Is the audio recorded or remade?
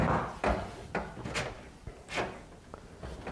recorded